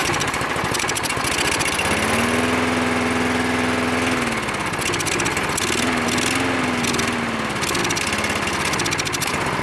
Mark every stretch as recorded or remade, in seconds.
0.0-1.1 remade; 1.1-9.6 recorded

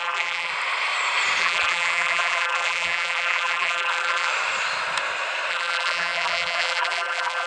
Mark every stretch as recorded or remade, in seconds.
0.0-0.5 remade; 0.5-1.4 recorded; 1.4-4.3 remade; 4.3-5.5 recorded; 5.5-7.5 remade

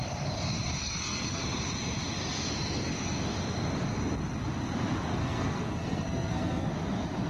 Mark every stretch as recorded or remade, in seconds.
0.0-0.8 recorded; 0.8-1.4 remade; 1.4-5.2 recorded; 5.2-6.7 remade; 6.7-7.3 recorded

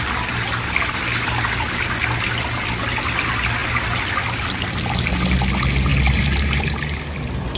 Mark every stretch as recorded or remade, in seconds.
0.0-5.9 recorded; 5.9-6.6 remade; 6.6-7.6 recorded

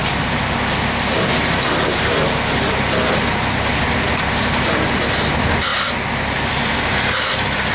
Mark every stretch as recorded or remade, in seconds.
0.0-7.7 recorded

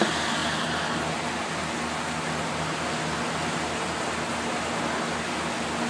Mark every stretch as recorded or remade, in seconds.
0.0-5.9 recorded

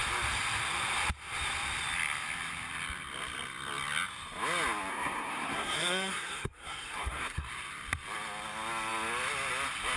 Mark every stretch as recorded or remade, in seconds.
0.0-4.9 recorded; 4.9-7.5 remade; 7.5-10.0 recorded

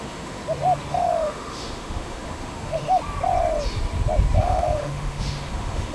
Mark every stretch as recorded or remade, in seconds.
0.0-0.4 remade; 0.4-0.9 recorded; 0.9-3.0 remade; 3.0-4.4 recorded; 4.4-5.9 remade